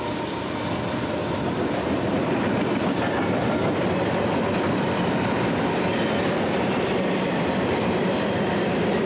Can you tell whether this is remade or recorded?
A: remade